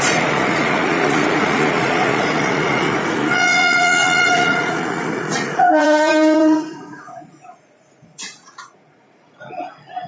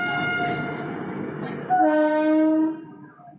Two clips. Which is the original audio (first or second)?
second